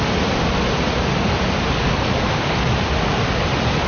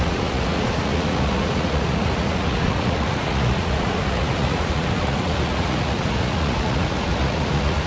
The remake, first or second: second